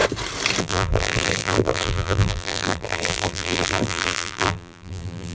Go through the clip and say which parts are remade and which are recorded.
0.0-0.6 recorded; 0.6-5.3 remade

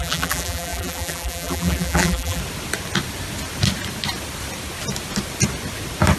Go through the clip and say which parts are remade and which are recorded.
0.0-2.4 remade; 2.4-6.2 recorded

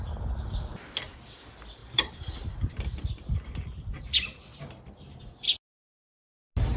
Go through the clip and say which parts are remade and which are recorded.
0.0-1.8 recorded; 1.8-3.0 remade; 3.0-6.8 recorded

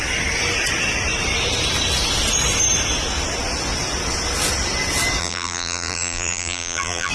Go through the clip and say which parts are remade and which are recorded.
0.0-5.2 recorded; 5.2-7.1 remade

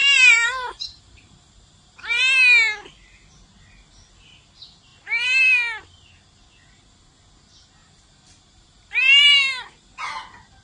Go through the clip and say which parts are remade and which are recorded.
0.0-2.2 remade; 2.2-7.8 recorded; 7.8-10.1 remade; 10.1-10.6 recorded

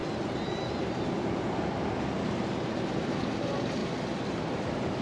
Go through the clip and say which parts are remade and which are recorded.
0.0-3.8 recorded; 3.8-5.0 remade